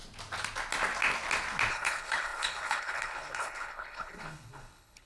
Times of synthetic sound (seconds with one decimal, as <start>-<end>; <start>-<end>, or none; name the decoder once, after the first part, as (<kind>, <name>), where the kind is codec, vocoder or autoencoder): 1.7-5.1 (codec, HILCodec)